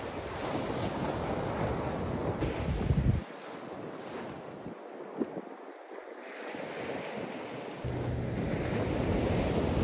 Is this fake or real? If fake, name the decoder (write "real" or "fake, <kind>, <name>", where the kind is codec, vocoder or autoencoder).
real